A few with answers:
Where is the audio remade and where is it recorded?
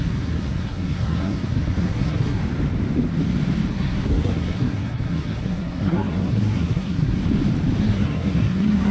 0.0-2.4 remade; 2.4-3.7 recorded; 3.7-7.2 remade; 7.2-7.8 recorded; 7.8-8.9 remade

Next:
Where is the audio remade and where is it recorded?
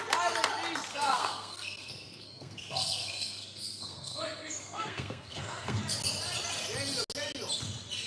0.0-0.9 recorded; 0.9-5.8 remade; 5.8-8.1 recorded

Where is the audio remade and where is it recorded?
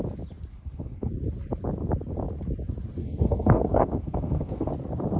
0.0-0.5 recorded; 0.5-1.1 remade; 1.1-3.0 recorded; 3.0-4.7 remade; 4.7-5.2 recorded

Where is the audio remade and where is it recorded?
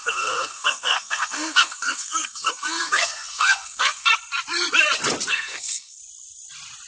0.0-4.1 remade; 4.1-5.3 recorded; 5.3-6.0 remade; 6.0-6.9 recorded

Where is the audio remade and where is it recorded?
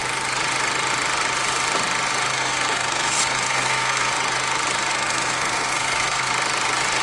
0.0-2.3 recorded; 2.3-4.1 remade; 4.1-4.9 recorded; 4.9-6.3 remade; 6.3-7.0 recorded